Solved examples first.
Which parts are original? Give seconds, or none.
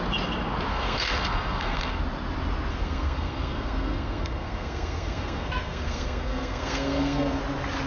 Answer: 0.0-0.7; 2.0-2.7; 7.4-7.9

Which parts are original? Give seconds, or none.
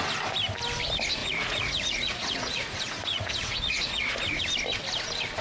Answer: 0.0-1.2; 4.4-5.4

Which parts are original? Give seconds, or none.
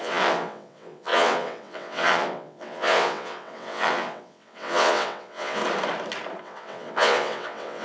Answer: 5.6-6.4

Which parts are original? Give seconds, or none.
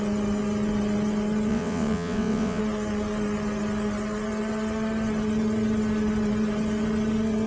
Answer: 0.0-1.5; 2.6-7.5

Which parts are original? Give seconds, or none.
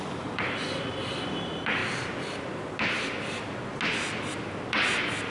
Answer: 1.8-4.7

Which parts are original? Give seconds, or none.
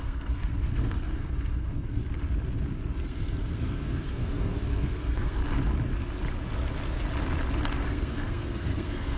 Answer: 2.0-3.0; 5.4-7.9